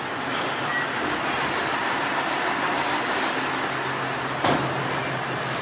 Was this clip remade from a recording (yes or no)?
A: no